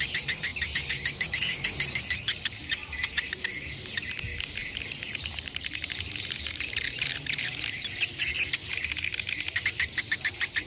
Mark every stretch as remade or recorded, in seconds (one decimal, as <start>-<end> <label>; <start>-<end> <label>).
0.0-2.8 recorded; 2.8-3.7 remade; 3.7-4.3 recorded; 4.3-7.6 remade; 7.6-10.7 recorded